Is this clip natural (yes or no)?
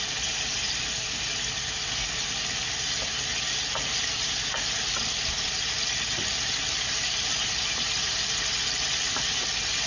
yes